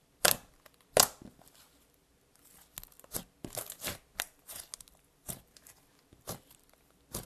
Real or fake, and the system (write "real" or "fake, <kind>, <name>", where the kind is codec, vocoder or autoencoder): real